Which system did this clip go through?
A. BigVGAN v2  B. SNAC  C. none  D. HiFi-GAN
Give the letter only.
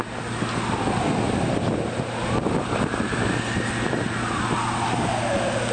C